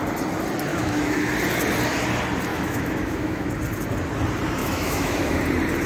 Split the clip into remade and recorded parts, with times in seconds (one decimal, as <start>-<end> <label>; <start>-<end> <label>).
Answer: 0.0-0.7 recorded; 0.7-1.3 remade; 1.3-2.5 recorded; 2.5-3.5 remade; 3.5-4.6 recorded; 4.6-5.4 remade; 5.4-5.9 recorded